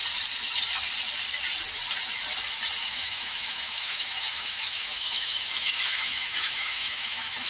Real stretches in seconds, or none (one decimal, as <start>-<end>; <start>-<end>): 0.0-2.8